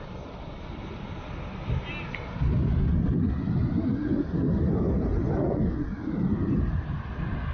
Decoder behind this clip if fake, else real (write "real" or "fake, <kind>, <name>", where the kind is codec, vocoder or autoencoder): real